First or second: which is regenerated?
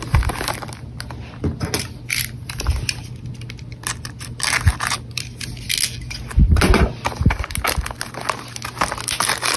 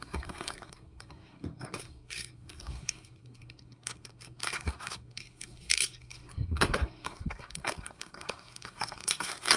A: second